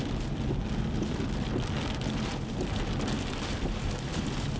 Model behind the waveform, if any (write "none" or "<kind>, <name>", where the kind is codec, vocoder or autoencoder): none